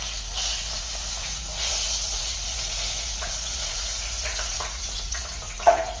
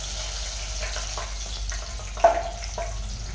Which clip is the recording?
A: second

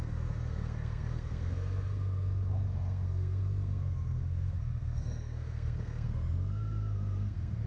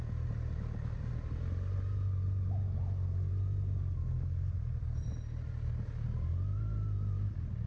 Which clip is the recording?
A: second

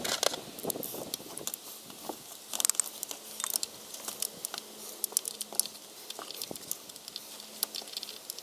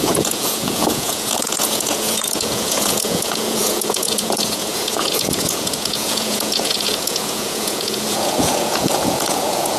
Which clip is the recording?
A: first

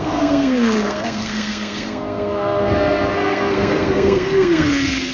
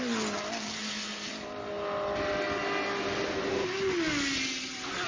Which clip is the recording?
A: second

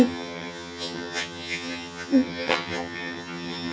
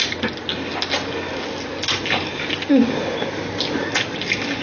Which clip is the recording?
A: second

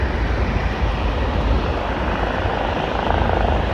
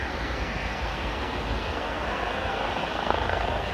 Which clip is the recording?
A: first